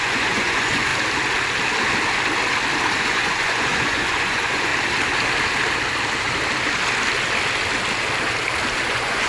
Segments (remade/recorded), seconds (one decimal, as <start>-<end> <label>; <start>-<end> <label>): 0.0-0.9 remade; 0.9-3.0 recorded; 3.0-4.7 remade; 4.7-8.9 recorded; 8.9-9.3 remade